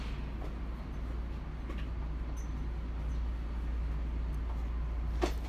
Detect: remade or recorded recorded